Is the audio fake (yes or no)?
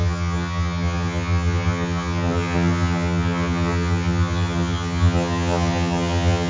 yes